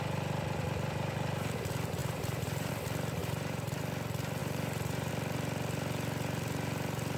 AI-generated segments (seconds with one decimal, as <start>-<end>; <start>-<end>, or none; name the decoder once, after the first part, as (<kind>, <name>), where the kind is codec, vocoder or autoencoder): 2.0-2.7 (vocoder, BigVGAN v2); 3.2-3.8; 4.4-5.1